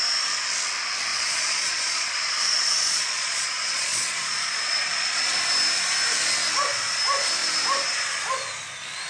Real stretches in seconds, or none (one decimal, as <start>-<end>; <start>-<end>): 0.0-1.1; 5.4-9.1